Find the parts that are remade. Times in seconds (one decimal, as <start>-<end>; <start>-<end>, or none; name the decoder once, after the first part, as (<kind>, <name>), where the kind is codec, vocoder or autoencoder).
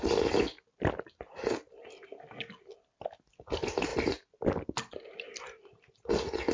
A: none